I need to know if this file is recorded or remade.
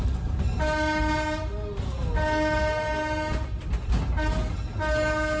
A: recorded